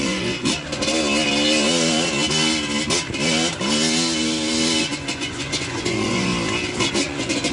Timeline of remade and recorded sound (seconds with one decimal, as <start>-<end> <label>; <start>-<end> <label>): 0.0-0.9 remade; 0.9-4.8 recorded; 4.8-6.3 remade; 6.3-6.9 recorded; 6.9-7.5 remade